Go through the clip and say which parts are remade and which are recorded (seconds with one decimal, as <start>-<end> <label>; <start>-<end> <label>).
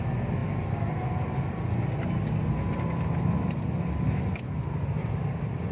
0.0-5.7 recorded